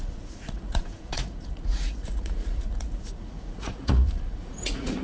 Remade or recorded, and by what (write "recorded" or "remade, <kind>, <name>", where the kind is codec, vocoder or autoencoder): remade, vocoder, Vocos